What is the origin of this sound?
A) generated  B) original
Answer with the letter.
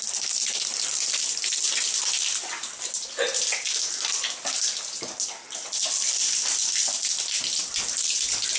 B